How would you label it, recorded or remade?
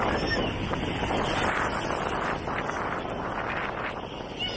recorded